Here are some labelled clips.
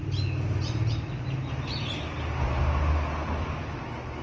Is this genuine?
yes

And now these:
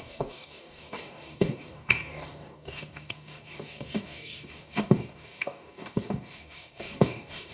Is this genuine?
no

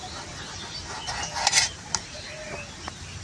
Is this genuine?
yes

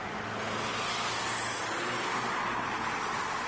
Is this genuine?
yes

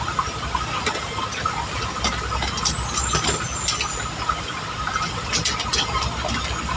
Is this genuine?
yes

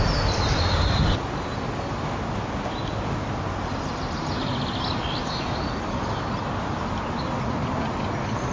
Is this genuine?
yes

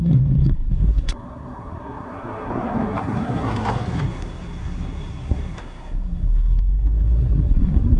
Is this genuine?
no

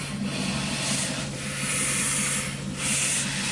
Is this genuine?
yes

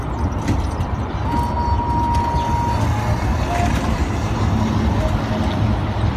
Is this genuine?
yes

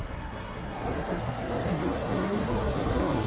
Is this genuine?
no